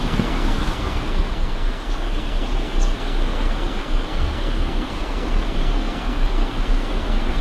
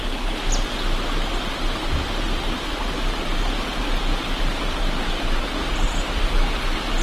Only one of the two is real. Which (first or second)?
second